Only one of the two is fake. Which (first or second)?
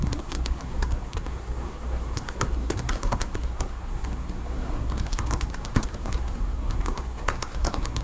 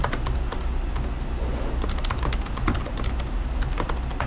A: first